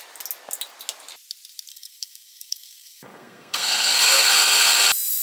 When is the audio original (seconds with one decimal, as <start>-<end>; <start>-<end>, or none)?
0.0-1.7; 4.8-5.2